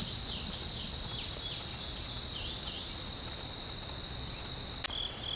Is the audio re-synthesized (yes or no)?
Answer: no